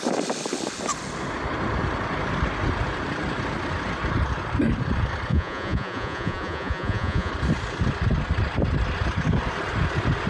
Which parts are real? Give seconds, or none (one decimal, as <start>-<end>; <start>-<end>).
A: 0.0-5.3; 7.3-10.3